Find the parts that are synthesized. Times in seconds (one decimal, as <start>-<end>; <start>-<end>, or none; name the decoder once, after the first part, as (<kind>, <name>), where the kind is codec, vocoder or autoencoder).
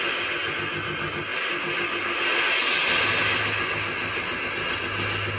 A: none